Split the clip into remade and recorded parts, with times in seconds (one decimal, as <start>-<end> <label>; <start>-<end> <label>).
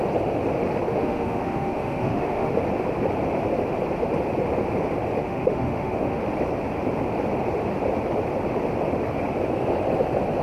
0.0-0.9 recorded; 0.9-2.5 remade; 2.5-5.2 recorded; 5.2-6.2 remade; 6.2-10.4 recorded